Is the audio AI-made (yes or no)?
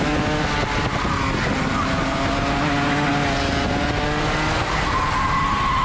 no